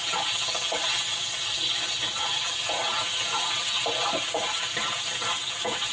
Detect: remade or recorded recorded